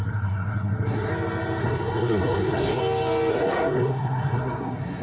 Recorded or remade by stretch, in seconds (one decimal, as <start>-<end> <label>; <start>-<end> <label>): 0.0-1.1 remade; 1.1-1.6 recorded; 1.6-2.8 remade; 2.8-3.3 recorded; 3.3-5.0 remade